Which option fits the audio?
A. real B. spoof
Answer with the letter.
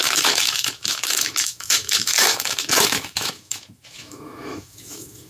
B